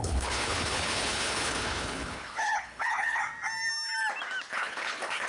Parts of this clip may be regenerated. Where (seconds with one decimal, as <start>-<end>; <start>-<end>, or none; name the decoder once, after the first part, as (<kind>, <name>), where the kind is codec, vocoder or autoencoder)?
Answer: 0.0-3.2 (codec, HILCodec); 4.5-5.3